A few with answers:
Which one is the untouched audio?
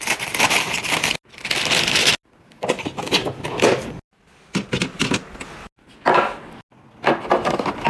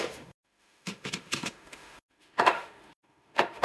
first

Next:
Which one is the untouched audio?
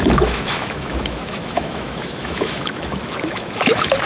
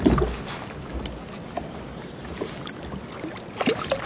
second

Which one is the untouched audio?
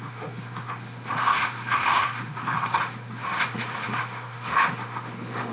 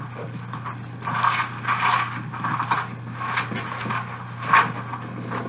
second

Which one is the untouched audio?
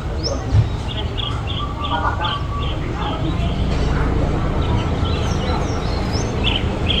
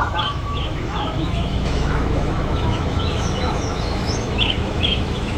first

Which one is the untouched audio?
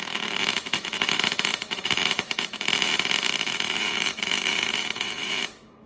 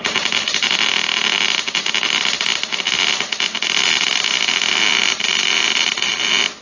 second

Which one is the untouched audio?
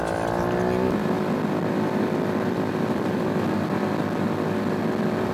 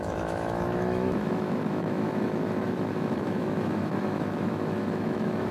first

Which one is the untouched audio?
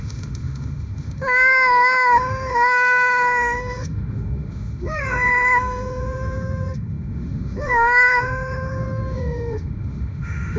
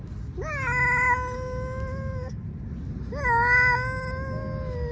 second